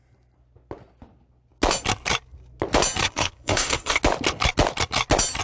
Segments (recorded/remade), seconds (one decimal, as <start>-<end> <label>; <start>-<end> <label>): 0.0-3.0 recorded; 3.0-4.0 remade; 4.0-5.4 recorded